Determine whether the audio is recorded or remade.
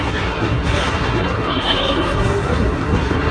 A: remade